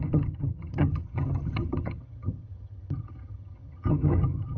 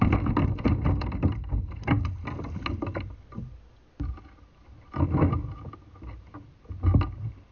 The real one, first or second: second